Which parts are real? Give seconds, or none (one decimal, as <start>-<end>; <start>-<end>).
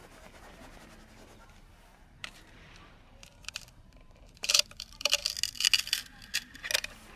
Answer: 0.0-1.7; 5.2-7.2